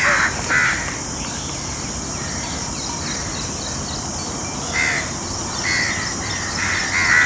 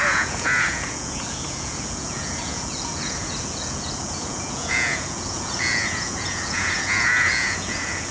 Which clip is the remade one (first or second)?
second